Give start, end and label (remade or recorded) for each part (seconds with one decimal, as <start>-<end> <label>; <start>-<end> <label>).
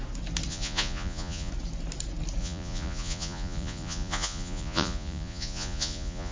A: 0.0-0.5 recorded; 0.5-1.5 remade; 1.5-2.4 recorded; 2.4-6.3 remade